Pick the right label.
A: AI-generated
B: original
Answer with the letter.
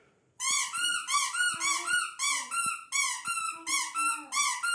B